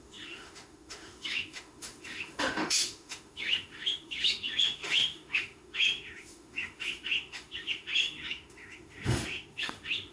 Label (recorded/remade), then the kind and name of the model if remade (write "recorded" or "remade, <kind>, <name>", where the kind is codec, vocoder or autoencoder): remade, autoencoder, DAC-VAE